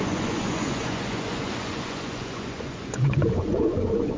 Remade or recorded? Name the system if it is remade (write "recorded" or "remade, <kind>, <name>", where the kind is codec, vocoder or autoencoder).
remade, vocoder, Vocos